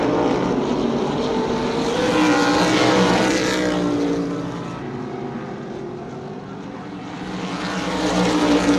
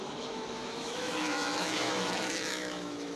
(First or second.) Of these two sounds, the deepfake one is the second